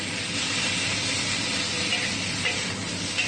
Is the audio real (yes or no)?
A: yes